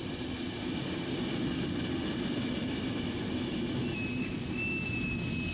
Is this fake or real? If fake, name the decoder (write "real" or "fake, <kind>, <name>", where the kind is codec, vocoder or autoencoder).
real